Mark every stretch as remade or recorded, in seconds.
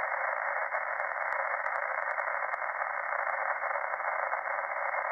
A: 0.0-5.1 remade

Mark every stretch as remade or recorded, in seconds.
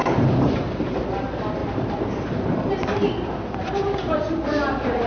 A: 0.0-1.0 remade; 1.0-1.6 recorded; 1.6-3.1 remade; 3.1-5.1 recorded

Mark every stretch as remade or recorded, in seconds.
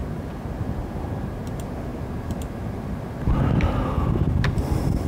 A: 0.0-1.4 remade; 1.4-5.1 recorded